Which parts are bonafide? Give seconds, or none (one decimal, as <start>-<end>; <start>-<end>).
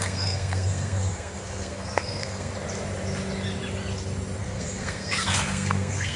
2.5-4.4